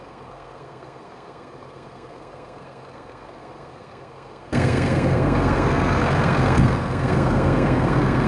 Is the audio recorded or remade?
remade